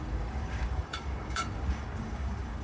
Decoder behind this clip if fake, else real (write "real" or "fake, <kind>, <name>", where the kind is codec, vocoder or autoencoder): fake, codec, DAC